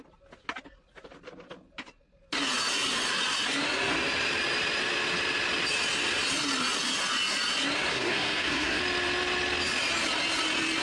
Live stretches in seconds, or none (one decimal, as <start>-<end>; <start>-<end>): 0.0-7.9; 8.8-10.8